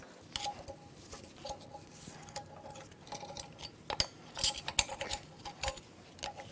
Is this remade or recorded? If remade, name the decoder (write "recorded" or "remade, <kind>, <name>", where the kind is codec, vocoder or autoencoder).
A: recorded